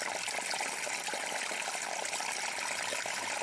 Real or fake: real